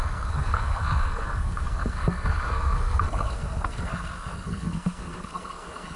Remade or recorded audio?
remade